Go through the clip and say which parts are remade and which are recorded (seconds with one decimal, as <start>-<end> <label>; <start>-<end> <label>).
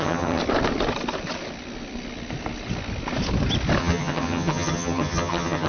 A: 0.0-0.4 remade; 0.4-3.8 recorded; 3.8-5.7 remade